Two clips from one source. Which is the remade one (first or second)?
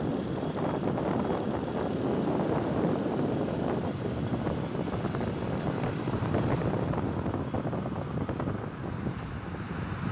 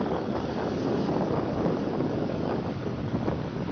second